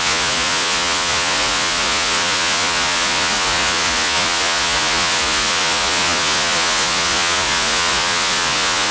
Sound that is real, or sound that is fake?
fake